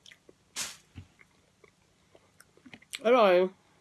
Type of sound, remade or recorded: recorded